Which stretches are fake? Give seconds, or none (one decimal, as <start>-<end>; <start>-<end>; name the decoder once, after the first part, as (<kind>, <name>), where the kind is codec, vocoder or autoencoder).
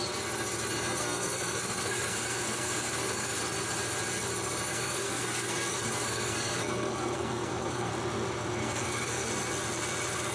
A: 1.0-3.4 (codec, SNAC); 4.7-7.9; 8.6-9.3